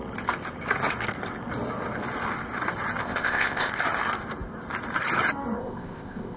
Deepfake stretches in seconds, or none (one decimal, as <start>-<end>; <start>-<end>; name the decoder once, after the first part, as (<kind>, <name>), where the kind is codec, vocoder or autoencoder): 3.0-3.7 (codec, ZipCodec); 5.6-6.4